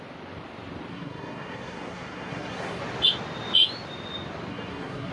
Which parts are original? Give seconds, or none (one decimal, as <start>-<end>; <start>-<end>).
0.0-0.9; 2.8-4.5